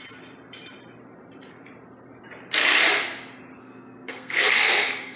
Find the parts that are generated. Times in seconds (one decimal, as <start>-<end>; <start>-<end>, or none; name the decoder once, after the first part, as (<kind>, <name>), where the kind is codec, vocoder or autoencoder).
3.6-5.2 (codec, SNAC)